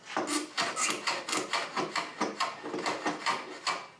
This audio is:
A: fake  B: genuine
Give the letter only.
B